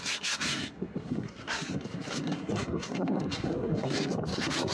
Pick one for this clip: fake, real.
fake